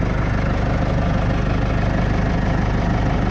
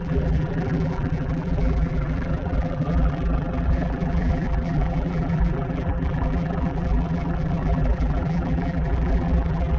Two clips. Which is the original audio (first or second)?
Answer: first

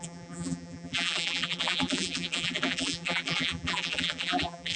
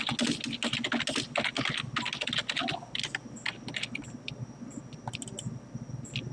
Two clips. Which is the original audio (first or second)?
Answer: second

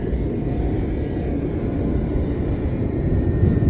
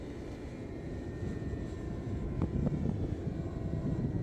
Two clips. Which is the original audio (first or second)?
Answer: second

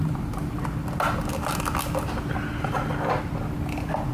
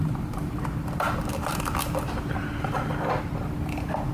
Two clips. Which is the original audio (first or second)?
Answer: first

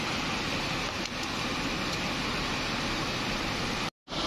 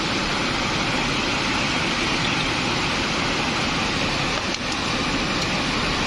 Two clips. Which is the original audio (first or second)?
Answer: first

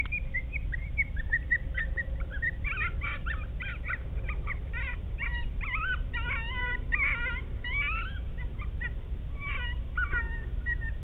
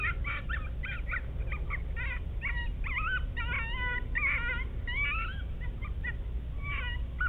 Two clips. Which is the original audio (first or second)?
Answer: second